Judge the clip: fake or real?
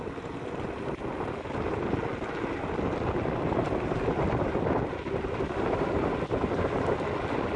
real